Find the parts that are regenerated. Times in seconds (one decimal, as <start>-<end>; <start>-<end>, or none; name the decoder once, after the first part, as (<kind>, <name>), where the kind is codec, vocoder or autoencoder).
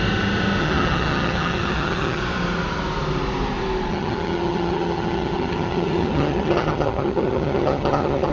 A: 0.6-2.2 (vocoder, HiFi-GAN); 3.9-8.3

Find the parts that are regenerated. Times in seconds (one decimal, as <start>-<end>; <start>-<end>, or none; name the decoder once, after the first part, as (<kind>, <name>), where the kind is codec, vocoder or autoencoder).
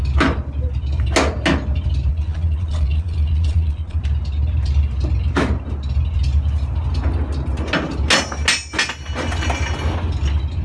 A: 2.1-4.0 (vocoder, Vocos)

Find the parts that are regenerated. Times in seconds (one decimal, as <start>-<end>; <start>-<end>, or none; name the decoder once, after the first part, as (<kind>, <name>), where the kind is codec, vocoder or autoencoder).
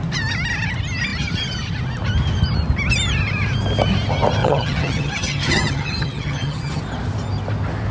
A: 4.4-6.8 (vocoder, HiFi-GAN)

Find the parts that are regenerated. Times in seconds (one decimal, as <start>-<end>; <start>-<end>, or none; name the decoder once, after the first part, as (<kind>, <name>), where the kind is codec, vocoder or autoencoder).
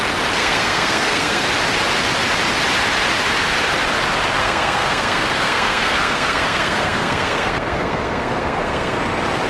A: 0.4-1.5 (codec, SNAC); 4.4-9.0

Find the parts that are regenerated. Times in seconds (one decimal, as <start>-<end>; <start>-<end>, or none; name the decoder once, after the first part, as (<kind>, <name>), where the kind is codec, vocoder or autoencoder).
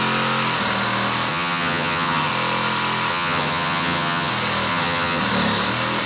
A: 1.3-2.3 (vocoder, HiFi-GAN); 3.1-4.3; 4.7-5.2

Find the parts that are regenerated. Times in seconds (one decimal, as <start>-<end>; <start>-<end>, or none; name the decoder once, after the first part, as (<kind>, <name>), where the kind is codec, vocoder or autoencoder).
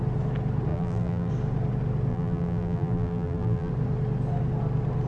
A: 0.7-1.3 (vocoder, BigVGAN v2); 2.1-3.7